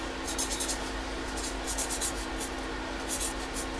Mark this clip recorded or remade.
recorded